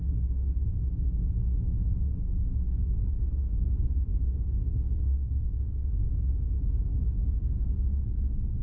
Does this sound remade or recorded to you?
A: remade